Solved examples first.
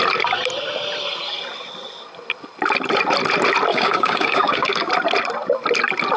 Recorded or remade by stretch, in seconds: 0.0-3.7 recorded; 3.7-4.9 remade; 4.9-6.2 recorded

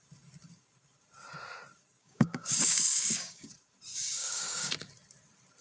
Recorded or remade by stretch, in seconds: 0.0-2.0 recorded; 2.0-3.5 remade; 3.5-3.9 recorded; 3.9-4.7 remade; 4.7-5.6 recorded

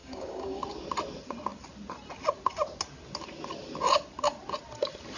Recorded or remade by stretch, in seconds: 0.0-0.6 remade; 0.6-5.2 recorded

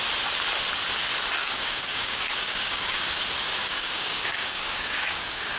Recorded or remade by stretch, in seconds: 0.0-1.4 recorded; 1.4-3.2 remade; 3.2-3.6 recorded; 3.6-5.6 remade

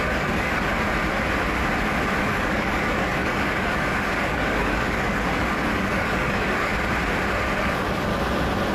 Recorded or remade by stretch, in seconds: 0.0-0.7 remade; 0.7-2.3 recorded; 2.3-6.7 remade; 6.7-7.6 recorded; 7.6-8.1 remade; 8.1-8.7 recorded

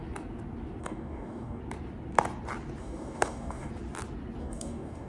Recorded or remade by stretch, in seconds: 0.0-0.8 recorded; 0.8-1.6 remade; 1.6-2.8 recorded; 2.8-3.7 remade; 3.7-4.4 recorded; 4.4-5.1 remade

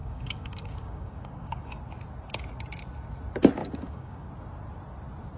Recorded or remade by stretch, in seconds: 0.0-1.7 remade; 1.7-3.6 recorded; 3.6-4.3 remade; 4.3-5.4 recorded